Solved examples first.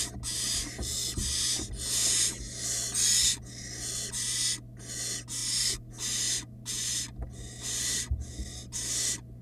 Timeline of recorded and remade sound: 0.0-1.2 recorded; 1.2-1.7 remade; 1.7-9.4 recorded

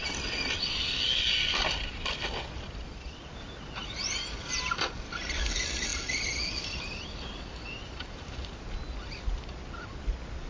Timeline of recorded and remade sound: 0.0-10.5 recorded

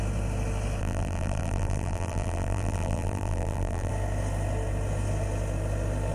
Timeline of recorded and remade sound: 0.0-0.8 recorded; 0.8-3.9 remade; 3.9-6.1 recorded

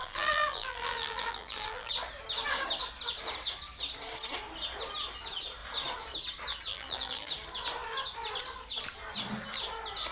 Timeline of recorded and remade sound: 0.0-1.9 remade; 1.9-6.7 recorded; 6.7-7.3 remade; 7.3-10.1 recorded